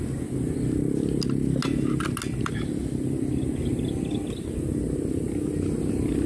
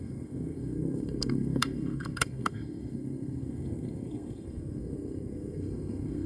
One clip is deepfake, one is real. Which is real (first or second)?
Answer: first